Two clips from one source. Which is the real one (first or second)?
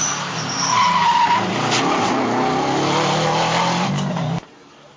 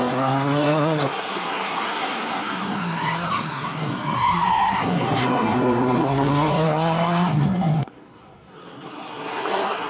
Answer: first